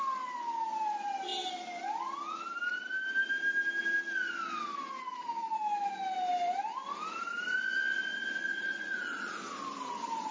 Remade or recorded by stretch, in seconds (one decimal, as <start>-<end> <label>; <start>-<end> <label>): 0.0-8.5 recorded; 8.5-9.4 remade; 9.4-10.3 recorded